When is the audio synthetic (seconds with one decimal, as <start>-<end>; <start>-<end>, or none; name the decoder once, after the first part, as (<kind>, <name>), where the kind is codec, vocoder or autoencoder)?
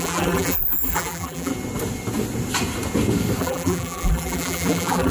0.0-1.5 (vocoder, BigVGAN v2); 3.4-5.1